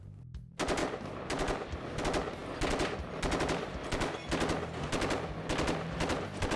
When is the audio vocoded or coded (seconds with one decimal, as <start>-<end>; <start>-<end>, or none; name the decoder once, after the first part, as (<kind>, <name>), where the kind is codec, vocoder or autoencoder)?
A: 0.8-2.0 (vocoder, BigVGAN v2)